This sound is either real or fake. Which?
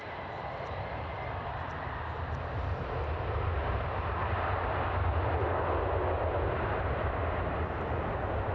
real